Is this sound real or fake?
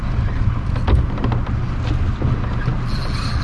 real